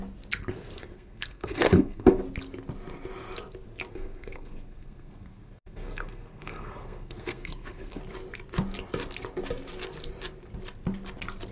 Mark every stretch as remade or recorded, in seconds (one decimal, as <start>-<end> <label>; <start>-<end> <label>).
0.0-0.5 recorded; 0.5-2.2 remade; 2.2-3.9 recorded; 3.9-8.0 remade; 8.0-11.5 recorded